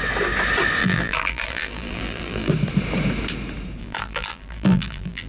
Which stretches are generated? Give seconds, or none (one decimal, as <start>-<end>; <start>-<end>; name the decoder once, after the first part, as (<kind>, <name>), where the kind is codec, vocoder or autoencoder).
0.8-2.5 (vocoder, BigVGAN v2); 3.8-5.3